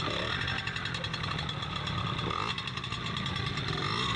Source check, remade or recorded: recorded